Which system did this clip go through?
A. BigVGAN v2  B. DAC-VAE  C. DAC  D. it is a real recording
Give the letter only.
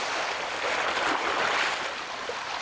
D